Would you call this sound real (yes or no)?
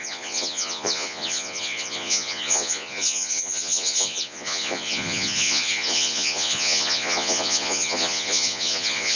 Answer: no